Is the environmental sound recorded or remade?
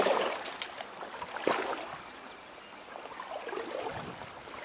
recorded